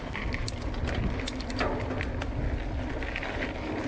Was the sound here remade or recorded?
recorded